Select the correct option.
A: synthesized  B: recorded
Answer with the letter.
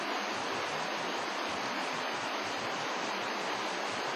B